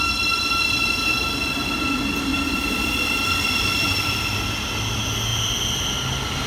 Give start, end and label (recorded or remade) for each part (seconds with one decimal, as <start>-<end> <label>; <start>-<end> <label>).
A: 0.0-2.3 recorded; 2.3-4.0 remade; 4.0-6.5 recorded